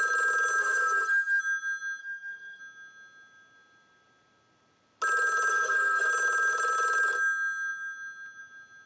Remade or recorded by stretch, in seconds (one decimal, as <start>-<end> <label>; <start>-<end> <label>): 0.0-0.6 recorded; 0.6-1.4 remade; 1.4-2.0 recorded; 2.0-2.6 remade; 2.6-5.5 recorded; 5.5-6.1 remade; 6.1-8.9 recorded